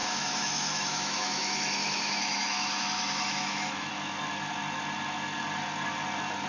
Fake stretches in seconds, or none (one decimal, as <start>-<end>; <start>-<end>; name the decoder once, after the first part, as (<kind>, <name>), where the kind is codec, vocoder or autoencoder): 0.0-3.9 (autoencoder, DAC-VAE)